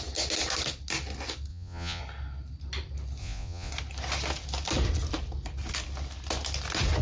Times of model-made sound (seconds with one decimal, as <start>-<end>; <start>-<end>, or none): 1.5-2.0; 3.2-3.7